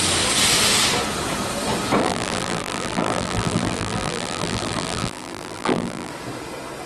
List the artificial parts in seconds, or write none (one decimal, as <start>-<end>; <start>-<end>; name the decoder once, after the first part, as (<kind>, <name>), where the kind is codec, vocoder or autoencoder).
2.0-6.1 (vocoder, BigVGAN v2)